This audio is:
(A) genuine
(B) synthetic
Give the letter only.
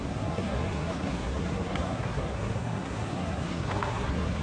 B